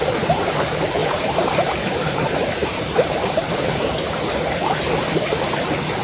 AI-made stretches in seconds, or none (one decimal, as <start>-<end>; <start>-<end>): 1.0-2.0; 2.6-3.9